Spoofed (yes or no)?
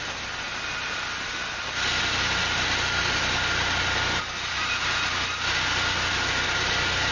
no